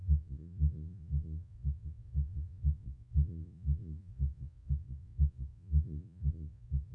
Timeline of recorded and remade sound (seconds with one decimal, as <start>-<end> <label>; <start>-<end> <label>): 0.0-6.9 remade